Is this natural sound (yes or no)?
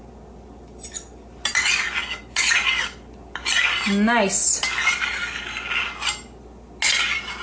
yes